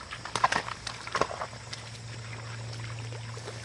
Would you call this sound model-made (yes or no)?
no